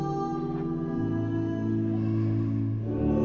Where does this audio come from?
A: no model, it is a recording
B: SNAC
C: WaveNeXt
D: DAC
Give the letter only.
A